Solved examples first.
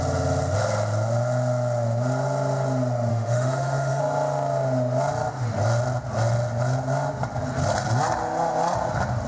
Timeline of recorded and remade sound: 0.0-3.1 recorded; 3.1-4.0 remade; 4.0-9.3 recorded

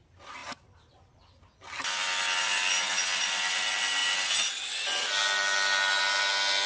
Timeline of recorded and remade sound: 0.0-6.7 recorded

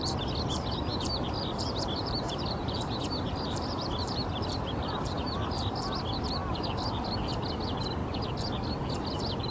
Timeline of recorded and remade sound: 0.0-0.9 recorded; 0.9-5.7 remade; 5.7-9.5 recorded

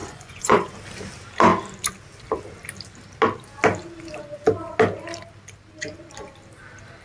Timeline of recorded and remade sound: 0.0-0.7 remade; 0.7-7.0 recorded

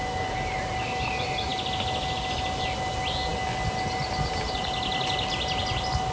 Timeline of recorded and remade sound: 0.0-6.1 recorded